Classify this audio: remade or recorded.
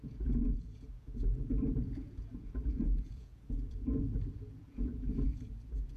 remade